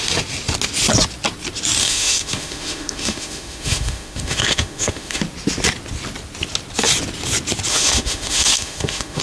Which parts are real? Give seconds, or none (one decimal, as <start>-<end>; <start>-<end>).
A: 0.0-1.8; 5.2-7.7